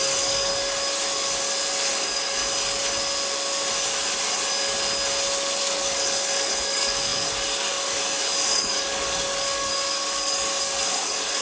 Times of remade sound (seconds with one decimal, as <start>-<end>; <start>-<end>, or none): 0.0-0.5; 1.9-2.4; 5.6-11.4